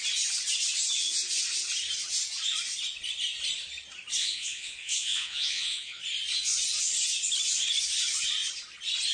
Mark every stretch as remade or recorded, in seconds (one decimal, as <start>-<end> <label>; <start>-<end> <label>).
0.0-4.2 recorded; 4.2-6.0 remade; 6.0-9.1 recorded